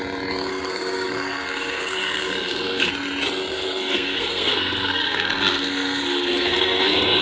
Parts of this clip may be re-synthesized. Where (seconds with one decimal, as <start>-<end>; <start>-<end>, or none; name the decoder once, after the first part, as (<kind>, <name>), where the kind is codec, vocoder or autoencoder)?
0.5-2.9 (codec, SNAC); 3.5-7.2